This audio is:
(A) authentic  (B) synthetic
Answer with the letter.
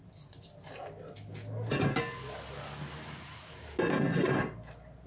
A